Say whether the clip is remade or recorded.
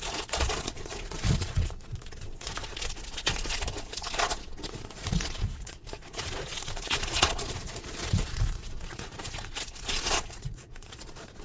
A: remade